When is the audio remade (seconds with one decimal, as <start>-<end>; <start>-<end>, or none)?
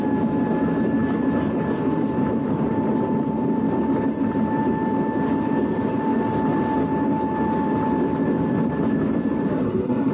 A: 9.5-10.1